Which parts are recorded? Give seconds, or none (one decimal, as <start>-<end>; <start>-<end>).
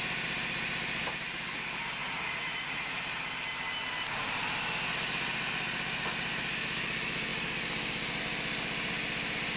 0.0-2.0; 3.0-9.6